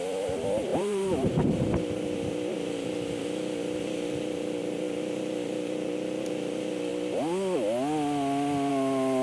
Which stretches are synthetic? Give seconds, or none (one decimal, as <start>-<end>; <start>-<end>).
0.7-1.6